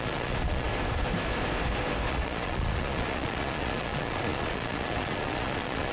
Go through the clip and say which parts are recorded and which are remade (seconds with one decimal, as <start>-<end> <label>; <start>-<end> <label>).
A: 0.0-0.7 remade; 0.7-2.1 recorded; 2.1-5.9 remade